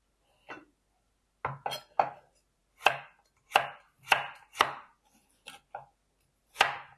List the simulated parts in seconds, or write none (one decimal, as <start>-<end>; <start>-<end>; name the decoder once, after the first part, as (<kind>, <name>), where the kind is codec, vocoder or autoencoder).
none